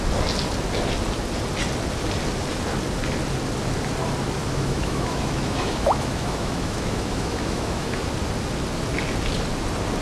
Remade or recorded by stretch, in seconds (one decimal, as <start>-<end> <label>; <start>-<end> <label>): 0.0-4.4 recorded; 4.4-8.1 remade; 8.1-10.0 recorded